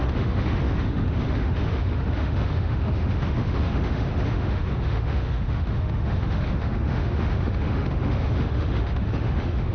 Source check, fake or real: fake